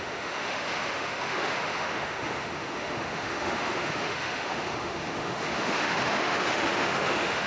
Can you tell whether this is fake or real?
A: fake